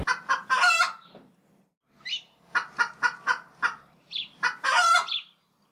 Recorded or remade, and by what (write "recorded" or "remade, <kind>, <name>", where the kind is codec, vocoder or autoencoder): recorded